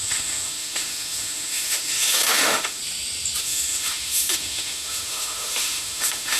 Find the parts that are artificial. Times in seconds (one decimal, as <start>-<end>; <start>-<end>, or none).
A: 0.0-2.8; 3.4-6.4